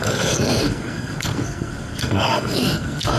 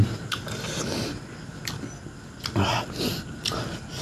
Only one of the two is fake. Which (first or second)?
first